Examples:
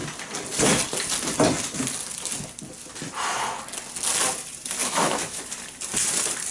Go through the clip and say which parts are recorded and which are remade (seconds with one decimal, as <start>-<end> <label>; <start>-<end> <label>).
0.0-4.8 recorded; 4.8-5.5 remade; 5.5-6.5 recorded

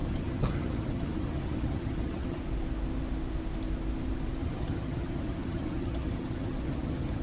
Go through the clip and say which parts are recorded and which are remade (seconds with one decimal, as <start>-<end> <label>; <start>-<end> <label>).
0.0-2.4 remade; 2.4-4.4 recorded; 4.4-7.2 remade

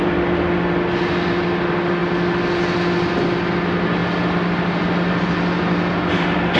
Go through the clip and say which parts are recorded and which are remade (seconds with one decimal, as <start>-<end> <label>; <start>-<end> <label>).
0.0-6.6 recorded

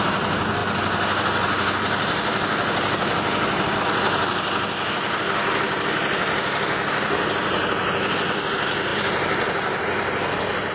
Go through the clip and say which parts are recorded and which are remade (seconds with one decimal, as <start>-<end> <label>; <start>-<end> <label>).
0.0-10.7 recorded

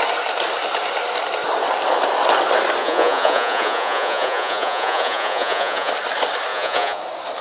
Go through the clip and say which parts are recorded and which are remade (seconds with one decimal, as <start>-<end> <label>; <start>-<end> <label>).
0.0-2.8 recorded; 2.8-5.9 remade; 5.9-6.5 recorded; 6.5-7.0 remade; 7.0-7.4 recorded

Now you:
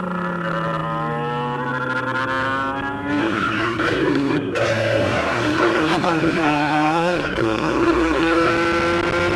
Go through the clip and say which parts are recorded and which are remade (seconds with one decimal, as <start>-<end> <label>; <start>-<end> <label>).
0.0-3.2 recorded; 3.2-8.5 remade; 8.5-9.4 recorded

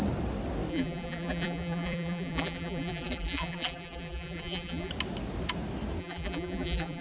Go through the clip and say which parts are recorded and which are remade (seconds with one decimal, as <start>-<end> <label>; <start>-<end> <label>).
0.0-0.7 recorded; 0.7-4.9 remade; 4.9-6.0 recorded; 6.0-7.0 remade